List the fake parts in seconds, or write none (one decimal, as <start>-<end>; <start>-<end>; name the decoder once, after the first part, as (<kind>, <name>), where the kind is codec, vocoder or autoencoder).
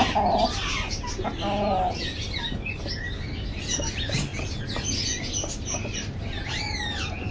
none